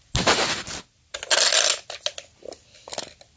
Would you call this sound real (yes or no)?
yes